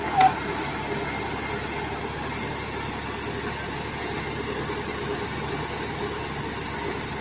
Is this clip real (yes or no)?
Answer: yes